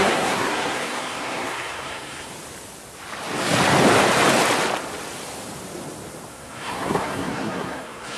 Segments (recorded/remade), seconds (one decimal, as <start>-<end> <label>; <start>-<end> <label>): 0.0-2.3 remade; 2.3-6.3 recorded; 6.3-8.2 remade